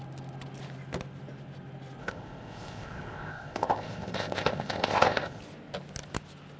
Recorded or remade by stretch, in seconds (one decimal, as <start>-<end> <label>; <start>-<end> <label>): 0.0-2.0 recorded; 2.0-5.4 remade; 5.4-6.6 recorded